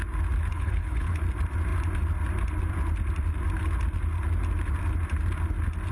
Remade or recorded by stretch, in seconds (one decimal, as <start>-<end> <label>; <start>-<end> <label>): 0.0-0.5 recorded; 0.5-1.2 remade; 1.2-5.9 recorded